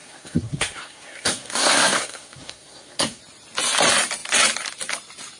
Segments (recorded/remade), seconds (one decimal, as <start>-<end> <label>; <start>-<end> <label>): 0.0-3.2 remade; 3.2-5.4 recorded